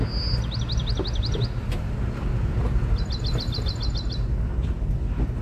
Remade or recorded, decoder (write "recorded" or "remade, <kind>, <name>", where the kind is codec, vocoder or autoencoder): recorded